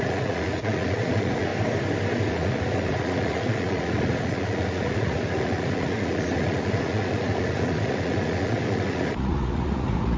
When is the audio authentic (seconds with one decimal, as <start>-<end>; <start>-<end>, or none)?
1.5-2.3